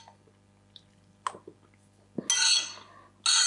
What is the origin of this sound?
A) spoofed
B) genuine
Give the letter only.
B